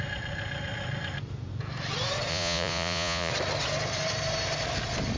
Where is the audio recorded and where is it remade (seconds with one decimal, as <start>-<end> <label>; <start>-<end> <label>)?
0.0-2.3 recorded; 2.3-3.3 remade; 3.3-5.2 recorded